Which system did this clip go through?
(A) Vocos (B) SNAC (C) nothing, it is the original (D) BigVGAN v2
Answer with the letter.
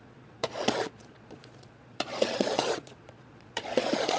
A